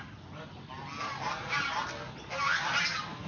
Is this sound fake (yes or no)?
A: no